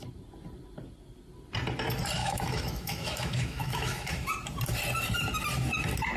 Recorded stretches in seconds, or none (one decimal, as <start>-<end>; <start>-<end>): 0.0-2.2; 4.3-6.2